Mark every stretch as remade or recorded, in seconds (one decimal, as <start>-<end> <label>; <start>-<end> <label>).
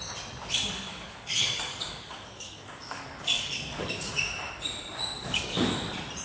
0.0-0.9 recorded; 0.9-4.1 remade; 4.1-5.0 recorded; 5.0-5.8 remade; 5.8-6.2 recorded